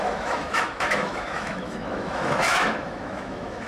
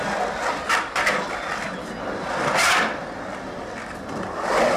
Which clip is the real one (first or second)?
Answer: second